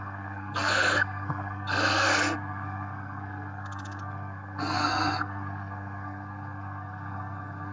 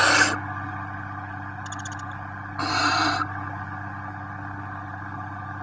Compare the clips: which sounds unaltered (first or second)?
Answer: second